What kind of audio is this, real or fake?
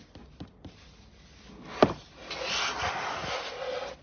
real